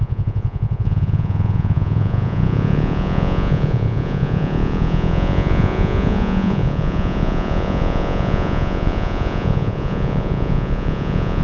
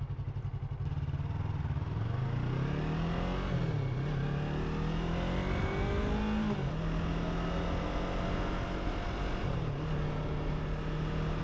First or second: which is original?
second